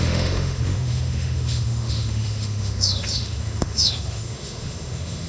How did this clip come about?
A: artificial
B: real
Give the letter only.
A